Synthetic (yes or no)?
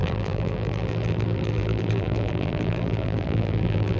yes